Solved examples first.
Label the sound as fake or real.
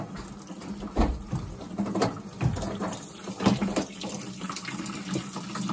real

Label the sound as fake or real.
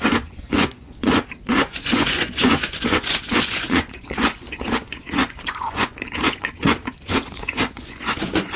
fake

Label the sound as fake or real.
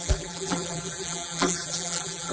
fake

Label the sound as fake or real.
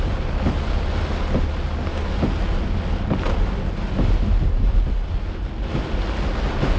real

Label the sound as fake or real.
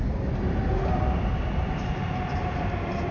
real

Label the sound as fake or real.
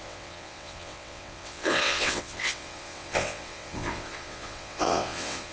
fake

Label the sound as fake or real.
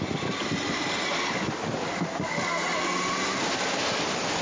real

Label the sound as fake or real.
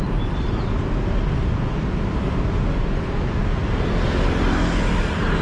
real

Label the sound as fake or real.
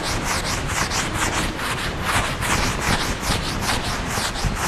real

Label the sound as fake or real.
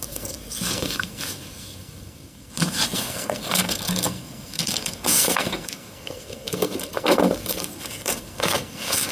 fake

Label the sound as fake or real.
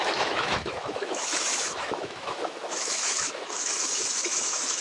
fake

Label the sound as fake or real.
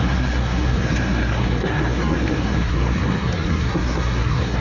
fake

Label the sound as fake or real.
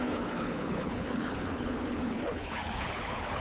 fake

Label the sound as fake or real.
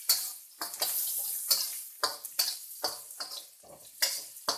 real